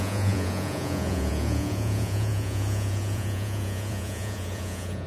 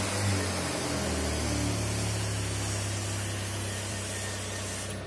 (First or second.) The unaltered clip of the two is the second